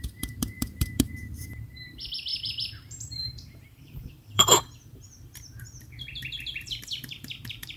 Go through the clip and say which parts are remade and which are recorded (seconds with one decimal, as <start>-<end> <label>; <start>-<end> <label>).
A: 0.0-7.8 remade

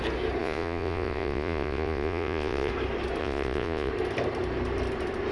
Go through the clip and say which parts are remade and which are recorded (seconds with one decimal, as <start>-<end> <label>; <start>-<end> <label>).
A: 0.0-0.4 recorded; 0.4-2.7 remade; 2.7-3.2 recorded; 3.2-3.9 remade; 3.9-5.3 recorded

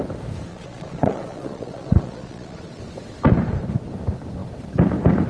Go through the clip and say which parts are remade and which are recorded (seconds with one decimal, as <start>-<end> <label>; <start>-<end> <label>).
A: 0.0-0.5 recorded; 0.5-2.8 remade; 2.8-5.3 recorded

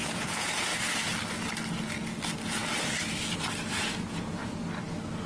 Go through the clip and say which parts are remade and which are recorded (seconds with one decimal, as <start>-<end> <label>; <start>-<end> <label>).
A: 0.0-0.7 remade; 0.7-3.7 recorded; 3.7-4.4 remade; 4.4-5.3 recorded

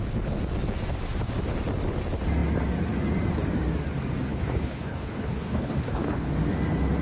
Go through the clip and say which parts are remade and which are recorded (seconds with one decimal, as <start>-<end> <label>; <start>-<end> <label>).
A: 0.0-4.3 recorded; 4.3-6.3 remade; 6.3-7.0 recorded

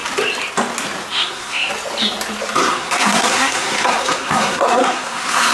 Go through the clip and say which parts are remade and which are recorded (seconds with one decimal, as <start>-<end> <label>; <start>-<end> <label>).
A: 0.0-1.1 recorded; 1.1-1.7 remade; 1.7-2.6 recorded; 2.6-5.5 remade

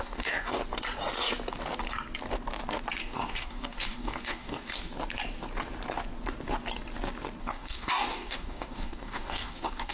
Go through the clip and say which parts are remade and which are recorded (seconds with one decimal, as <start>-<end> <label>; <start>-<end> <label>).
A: 0.0-0.6 remade; 0.6-3.0 recorded; 3.0-4.9 remade; 4.9-7.4 recorded; 7.4-9.9 remade